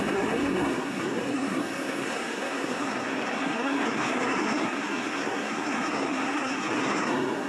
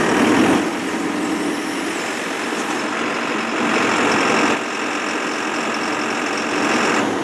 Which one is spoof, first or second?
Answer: first